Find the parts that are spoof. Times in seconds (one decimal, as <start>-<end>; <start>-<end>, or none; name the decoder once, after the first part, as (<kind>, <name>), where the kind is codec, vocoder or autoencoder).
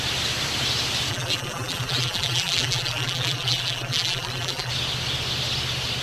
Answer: 1.1-4.7 (vocoder, BigVGAN v2)